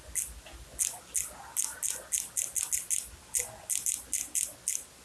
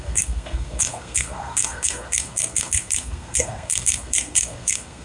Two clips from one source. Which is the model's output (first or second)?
second